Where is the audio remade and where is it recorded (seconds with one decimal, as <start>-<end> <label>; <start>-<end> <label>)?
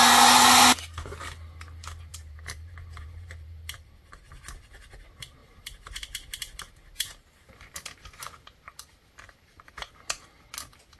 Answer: 0.0-2.1 recorded; 2.1-3.6 remade; 3.6-5.4 recorded; 5.4-9.7 remade; 9.7-11.0 recorded